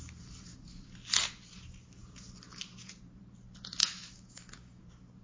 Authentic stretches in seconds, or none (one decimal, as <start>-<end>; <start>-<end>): 0.0-3.8; 4.8-5.2